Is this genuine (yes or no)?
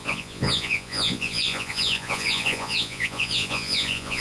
no